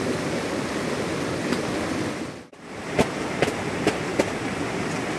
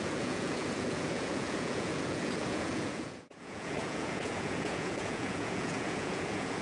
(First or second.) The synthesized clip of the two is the second